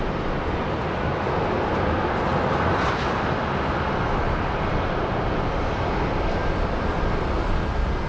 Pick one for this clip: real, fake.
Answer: real